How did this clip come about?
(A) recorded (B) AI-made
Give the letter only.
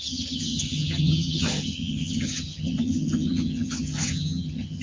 B